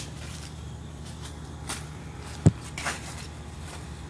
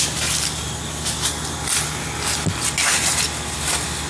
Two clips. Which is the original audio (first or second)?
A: second